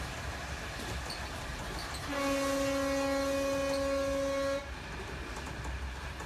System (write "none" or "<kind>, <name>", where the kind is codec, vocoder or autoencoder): none